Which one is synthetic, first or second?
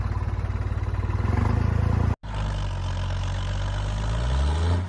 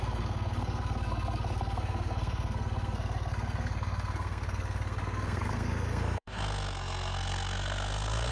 second